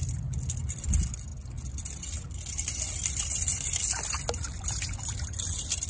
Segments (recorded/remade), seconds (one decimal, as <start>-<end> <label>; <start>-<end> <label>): 0.0-5.9 recorded